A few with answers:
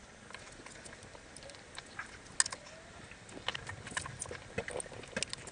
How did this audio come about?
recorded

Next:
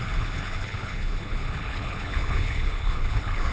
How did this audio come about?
remade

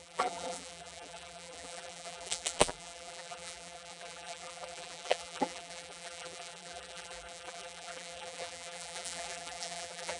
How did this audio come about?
remade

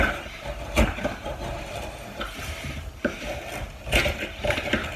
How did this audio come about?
recorded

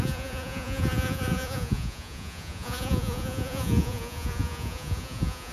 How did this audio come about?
remade